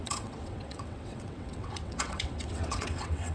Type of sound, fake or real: fake